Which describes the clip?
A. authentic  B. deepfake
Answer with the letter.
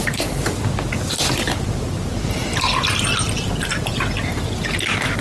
A